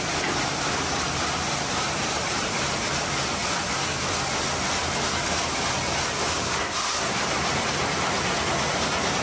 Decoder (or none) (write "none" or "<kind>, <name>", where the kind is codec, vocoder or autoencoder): none